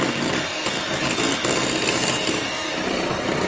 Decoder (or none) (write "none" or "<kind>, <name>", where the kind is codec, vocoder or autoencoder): none